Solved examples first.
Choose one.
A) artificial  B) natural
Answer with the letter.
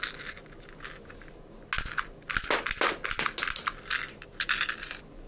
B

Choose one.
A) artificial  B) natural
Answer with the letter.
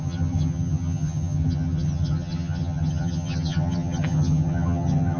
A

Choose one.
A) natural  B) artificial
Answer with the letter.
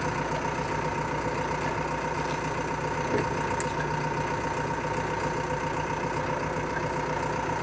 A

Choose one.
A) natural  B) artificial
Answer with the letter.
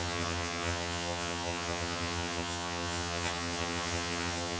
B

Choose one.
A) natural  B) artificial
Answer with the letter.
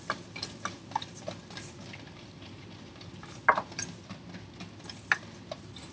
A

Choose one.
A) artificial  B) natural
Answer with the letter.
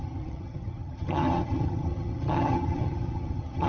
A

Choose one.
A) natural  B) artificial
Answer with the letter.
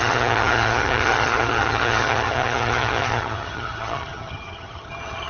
B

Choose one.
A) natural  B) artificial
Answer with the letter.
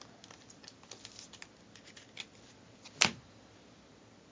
A